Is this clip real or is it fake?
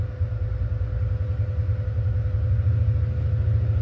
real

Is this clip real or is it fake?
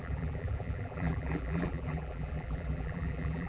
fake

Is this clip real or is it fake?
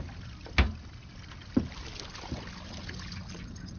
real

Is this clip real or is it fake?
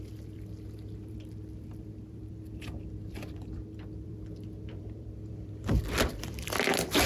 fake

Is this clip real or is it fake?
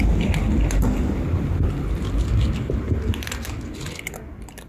real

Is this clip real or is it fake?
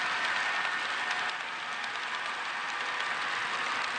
real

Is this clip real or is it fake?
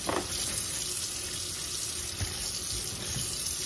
real